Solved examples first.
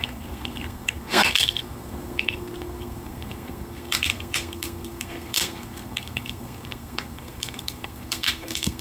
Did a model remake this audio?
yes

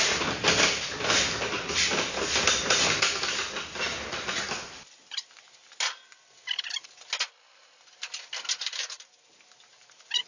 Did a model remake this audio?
no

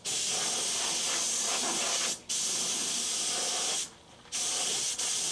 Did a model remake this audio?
no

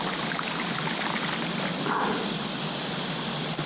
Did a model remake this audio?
no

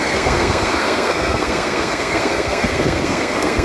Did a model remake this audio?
yes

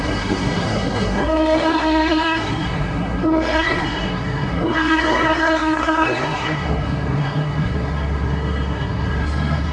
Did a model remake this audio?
yes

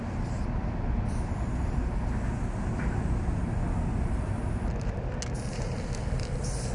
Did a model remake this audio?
no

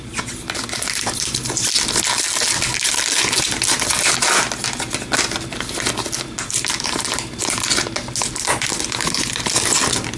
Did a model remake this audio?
no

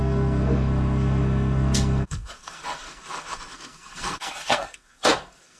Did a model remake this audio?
yes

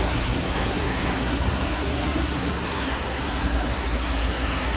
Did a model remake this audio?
yes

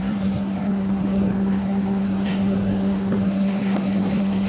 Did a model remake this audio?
yes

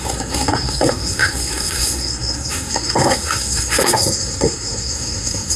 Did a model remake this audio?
yes